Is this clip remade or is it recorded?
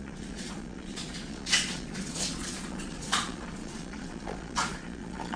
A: remade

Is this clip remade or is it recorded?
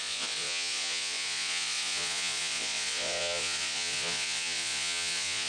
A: remade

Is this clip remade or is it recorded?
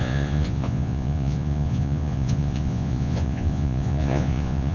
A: remade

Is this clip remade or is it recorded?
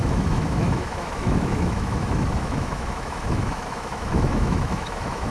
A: remade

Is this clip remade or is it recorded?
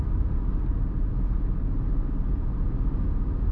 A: recorded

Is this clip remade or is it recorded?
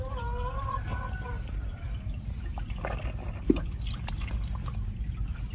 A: recorded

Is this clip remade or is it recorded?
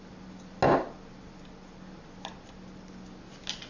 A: recorded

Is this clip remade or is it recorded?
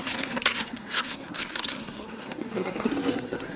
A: remade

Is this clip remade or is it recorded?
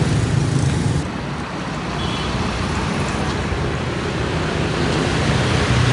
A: recorded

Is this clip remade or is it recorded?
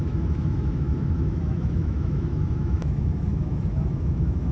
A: remade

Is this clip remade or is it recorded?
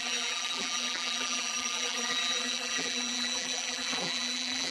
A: remade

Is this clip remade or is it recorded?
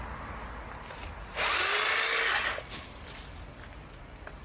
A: recorded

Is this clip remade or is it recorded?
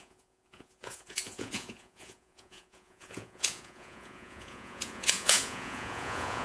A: remade